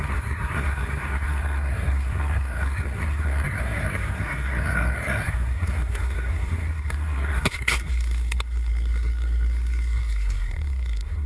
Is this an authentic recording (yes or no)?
no